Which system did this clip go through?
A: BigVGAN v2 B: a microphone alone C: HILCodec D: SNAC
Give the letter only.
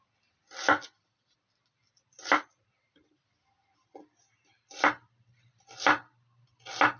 B